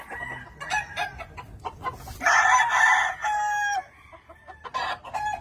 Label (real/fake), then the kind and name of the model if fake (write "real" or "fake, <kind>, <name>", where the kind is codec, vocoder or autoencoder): real